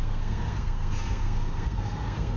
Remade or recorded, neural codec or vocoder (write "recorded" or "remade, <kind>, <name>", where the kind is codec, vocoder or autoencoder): remade, codec, SNAC